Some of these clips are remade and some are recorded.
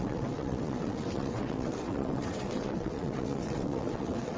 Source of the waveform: remade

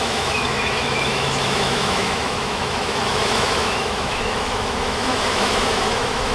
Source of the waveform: remade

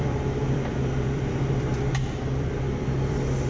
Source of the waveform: remade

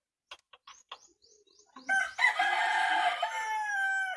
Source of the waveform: recorded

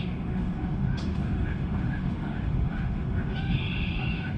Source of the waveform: remade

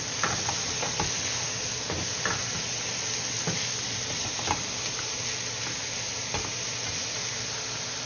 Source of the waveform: recorded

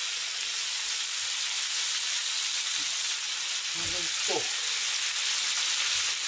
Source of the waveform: recorded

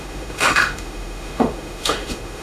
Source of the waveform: remade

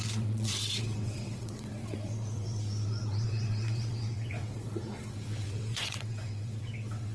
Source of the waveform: remade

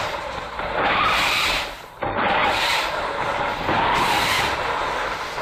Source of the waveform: remade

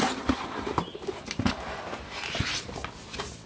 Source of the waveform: recorded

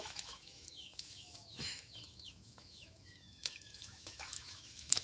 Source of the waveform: remade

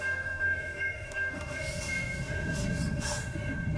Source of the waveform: remade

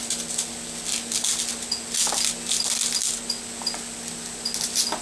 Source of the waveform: recorded